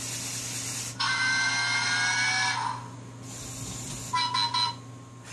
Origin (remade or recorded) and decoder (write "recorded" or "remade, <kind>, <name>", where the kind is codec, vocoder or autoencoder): recorded